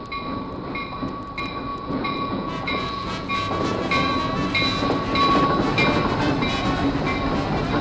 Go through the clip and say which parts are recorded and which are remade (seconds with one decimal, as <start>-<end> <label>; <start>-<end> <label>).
0.0-1.7 recorded; 1.7-3.3 remade; 3.3-7.8 recorded